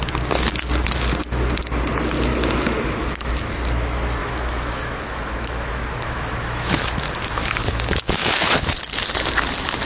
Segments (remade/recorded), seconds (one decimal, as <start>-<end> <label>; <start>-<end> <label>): 0.0-2.3 recorded; 2.3-3.3 remade; 3.3-4.2 recorded; 4.2-8.7 remade; 8.7-9.8 recorded